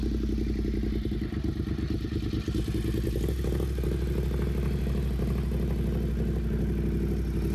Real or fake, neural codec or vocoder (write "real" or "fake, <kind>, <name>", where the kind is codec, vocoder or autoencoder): real